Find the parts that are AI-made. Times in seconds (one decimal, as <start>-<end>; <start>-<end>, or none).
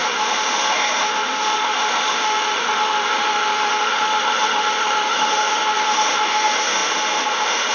0.0-7.7